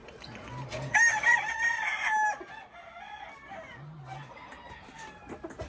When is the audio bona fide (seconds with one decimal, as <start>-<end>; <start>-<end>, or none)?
0.0-5.7